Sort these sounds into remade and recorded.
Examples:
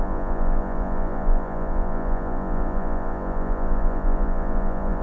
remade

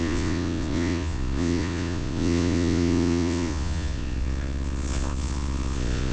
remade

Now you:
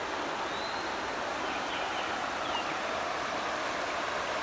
recorded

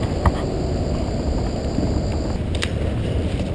recorded